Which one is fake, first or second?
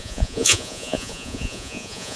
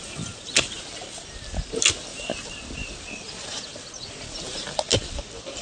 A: first